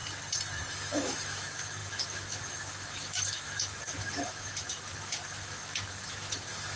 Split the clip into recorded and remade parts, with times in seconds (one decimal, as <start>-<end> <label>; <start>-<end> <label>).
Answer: 0.0-0.7 recorded; 0.7-6.8 remade